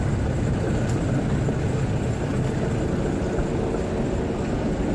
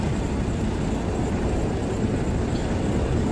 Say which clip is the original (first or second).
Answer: first